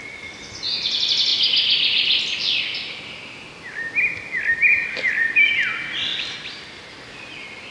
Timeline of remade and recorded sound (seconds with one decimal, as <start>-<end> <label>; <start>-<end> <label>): 0.0-6.1 recorded; 6.1-7.0 remade; 7.0-7.7 recorded